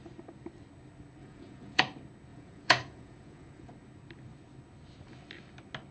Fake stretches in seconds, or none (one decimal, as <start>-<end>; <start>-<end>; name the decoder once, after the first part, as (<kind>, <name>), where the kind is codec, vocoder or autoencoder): 1.2-1.8 (vocoder, Vocos); 2.3-3.7